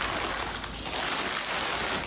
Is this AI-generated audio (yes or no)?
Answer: no